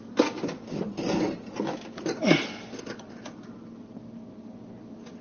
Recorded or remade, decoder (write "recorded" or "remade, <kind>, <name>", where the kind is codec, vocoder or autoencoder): recorded